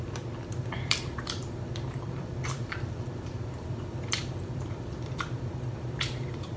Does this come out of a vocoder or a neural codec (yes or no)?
yes